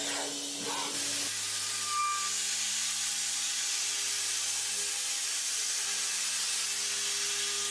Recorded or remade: recorded